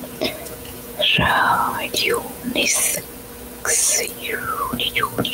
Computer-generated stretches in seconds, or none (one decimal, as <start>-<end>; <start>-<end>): 0.0-2.9

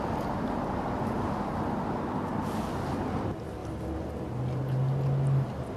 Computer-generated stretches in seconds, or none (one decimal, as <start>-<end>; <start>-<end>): none

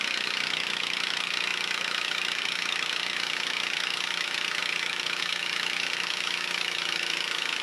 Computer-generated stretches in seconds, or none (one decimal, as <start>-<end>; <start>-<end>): 0.0-7.6

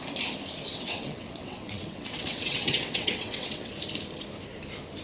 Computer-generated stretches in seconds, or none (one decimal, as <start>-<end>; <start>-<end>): 0.7-3.7